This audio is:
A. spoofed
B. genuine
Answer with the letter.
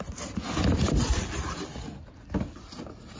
B